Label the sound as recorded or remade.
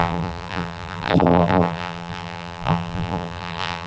remade